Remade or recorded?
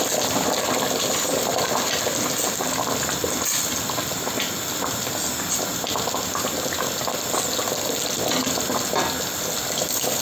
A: recorded